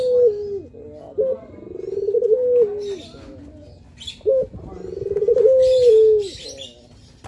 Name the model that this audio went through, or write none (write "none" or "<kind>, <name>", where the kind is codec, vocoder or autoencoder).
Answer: none